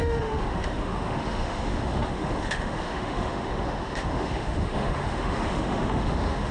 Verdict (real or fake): fake